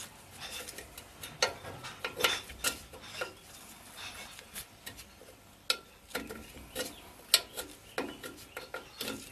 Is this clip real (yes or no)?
yes